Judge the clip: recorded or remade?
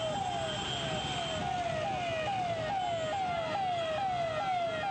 recorded